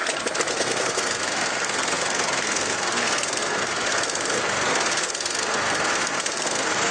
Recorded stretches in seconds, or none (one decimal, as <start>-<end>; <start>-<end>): 0.0-0.5